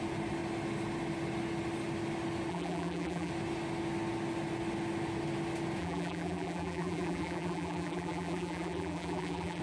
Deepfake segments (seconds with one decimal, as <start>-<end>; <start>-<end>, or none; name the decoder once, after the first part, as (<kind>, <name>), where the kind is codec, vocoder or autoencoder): 2.5-3.3 (vocoder, BigVGAN v2); 5.8-9.6